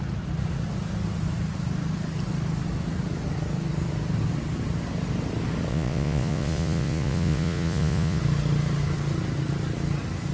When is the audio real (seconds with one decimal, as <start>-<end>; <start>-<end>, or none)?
0.0-5.7; 8.2-10.3